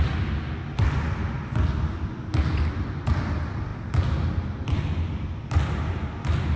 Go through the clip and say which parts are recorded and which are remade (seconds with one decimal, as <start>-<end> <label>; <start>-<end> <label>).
0.0-6.6 recorded